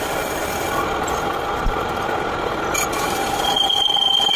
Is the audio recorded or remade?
recorded